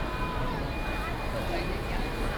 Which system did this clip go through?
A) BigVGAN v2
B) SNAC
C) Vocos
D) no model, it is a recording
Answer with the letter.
D